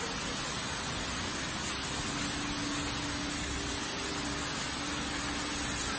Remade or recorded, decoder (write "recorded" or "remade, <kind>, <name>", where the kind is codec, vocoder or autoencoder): recorded